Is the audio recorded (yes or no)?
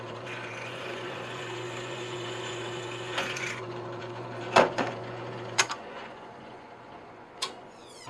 no